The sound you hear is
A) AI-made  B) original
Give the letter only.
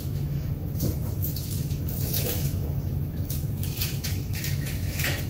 A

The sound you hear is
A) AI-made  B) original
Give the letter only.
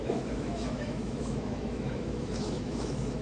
A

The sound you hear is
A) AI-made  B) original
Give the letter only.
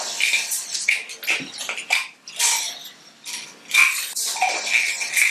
B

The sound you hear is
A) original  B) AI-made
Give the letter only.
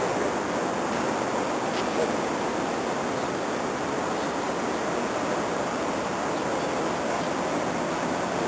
A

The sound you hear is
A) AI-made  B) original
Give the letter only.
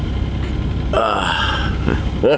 B